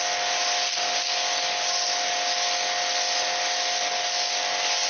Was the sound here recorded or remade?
recorded